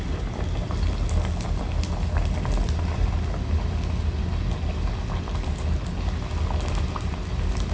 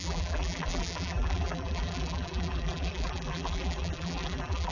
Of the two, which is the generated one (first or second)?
second